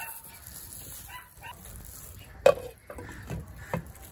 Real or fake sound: real